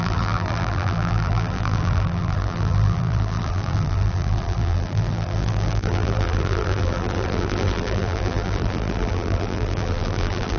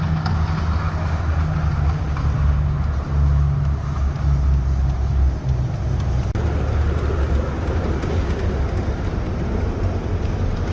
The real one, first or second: second